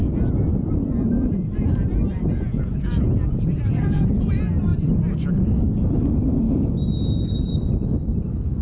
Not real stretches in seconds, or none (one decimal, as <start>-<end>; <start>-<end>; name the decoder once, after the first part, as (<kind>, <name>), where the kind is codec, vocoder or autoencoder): 0.0-4.2 (vocoder, Vocos)